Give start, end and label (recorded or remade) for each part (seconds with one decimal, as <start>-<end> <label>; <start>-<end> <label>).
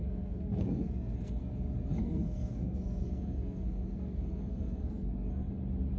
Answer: 0.0-1.5 remade; 1.5-1.9 recorded; 1.9-5.5 remade; 5.5-6.0 recorded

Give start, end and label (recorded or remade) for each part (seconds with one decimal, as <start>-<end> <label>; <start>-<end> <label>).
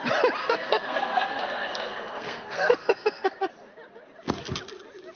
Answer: 0.0-0.4 recorded; 0.4-3.5 remade; 3.5-5.2 recorded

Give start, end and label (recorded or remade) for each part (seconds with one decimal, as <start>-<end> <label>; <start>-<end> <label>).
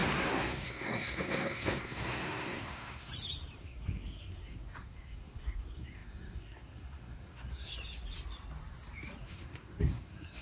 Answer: 0.0-3.1 remade; 3.1-3.6 recorded; 3.6-7.7 remade; 7.7-9.2 recorded; 9.2-10.4 remade